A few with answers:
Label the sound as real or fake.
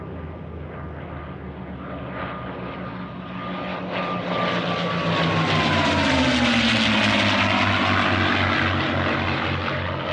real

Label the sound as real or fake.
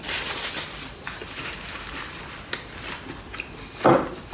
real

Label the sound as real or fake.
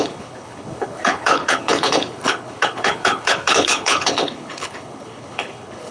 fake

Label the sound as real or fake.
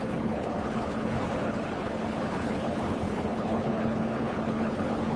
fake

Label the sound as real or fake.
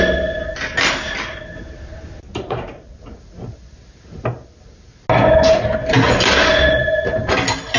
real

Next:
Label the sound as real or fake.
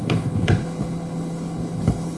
fake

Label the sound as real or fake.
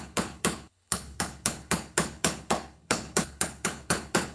fake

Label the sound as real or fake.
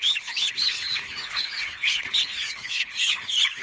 fake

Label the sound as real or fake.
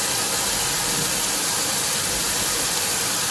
real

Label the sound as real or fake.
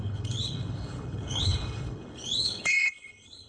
fake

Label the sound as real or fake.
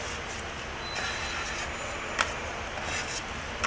real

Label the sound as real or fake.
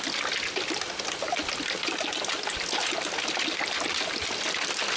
real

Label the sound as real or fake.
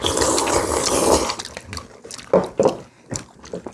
real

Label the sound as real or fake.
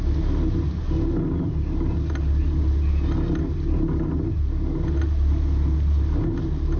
real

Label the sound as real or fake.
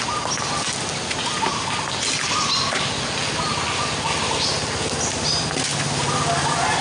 real